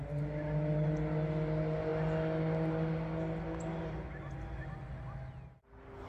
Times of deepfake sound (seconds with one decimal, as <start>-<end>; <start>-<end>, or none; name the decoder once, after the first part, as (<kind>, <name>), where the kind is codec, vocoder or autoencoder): none